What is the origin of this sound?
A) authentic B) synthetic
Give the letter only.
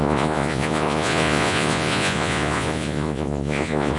B